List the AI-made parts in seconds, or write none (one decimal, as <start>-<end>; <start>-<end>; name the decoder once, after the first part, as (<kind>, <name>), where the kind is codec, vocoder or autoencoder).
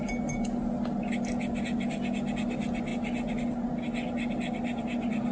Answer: none